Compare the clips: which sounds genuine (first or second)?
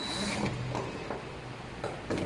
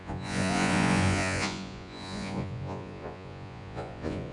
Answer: first